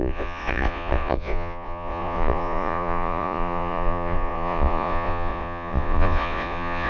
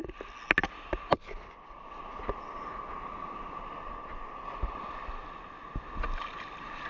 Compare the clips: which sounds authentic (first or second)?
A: second